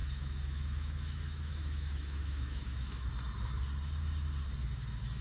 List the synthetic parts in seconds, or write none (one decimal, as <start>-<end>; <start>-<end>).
0.0-3.1